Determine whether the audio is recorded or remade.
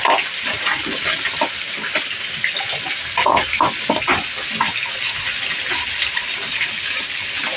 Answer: recorded